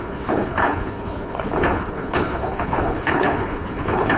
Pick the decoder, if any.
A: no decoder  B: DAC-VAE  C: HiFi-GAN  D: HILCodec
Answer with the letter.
D